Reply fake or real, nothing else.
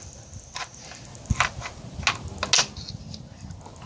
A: real